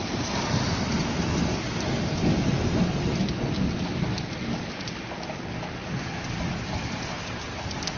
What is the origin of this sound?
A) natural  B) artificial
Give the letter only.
A